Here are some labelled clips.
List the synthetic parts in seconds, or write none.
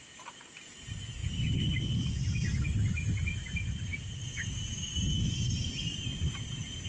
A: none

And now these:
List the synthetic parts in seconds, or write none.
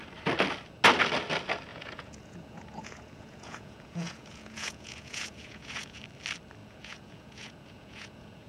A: 1.7-6.0 (vocoder, Vocos); 6.6-8.5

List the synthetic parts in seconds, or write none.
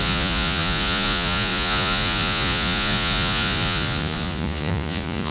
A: 0.0-5.3 (vocoder, Vocos)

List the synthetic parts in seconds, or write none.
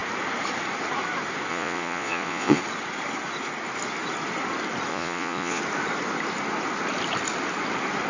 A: 1.5-2.6 (vocoder, Vocos); 4.9-5.6